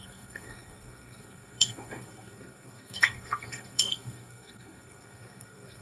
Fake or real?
fake